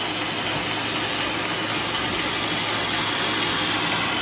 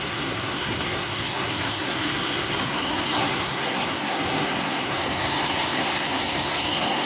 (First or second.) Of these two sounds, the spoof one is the second